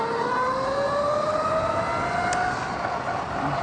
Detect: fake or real real